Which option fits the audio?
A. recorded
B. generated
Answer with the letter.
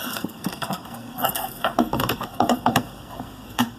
B